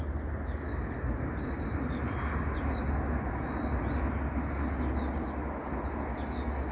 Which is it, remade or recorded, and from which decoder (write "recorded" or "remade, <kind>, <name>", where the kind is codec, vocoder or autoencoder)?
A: recorded